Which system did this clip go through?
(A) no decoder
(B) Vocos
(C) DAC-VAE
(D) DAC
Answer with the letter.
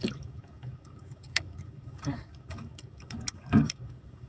D